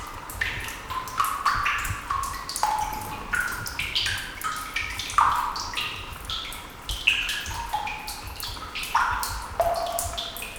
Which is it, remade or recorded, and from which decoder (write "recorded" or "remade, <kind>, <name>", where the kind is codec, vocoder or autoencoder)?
recorded